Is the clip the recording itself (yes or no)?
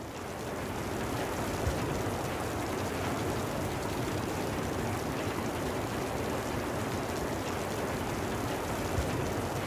no